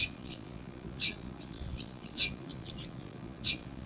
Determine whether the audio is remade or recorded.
remade